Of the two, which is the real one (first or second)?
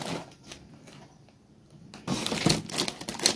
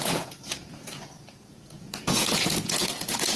first